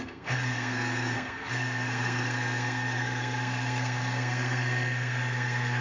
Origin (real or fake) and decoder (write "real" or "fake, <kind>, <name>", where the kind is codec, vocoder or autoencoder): fake, codec, SNAC